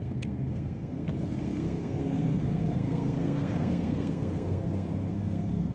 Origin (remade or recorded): remade